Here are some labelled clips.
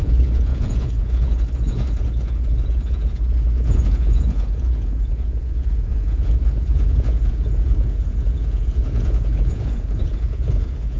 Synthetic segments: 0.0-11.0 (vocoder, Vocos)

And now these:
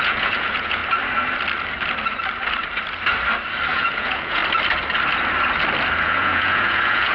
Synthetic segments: 0.0-0.8 (vocoder, Vocos); 3.7-4.4; 6.0-7.1

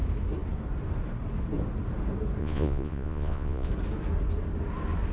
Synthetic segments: 2.4-3.7 (vocoder, Vocos)

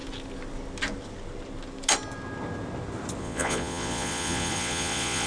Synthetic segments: 3.2-5.3 (vocoder, Vocos)

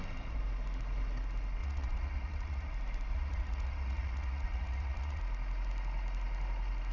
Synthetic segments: 1.6-2.7 (vocoder, Vocos); 3.1-5.2